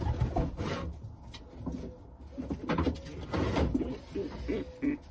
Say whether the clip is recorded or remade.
recorded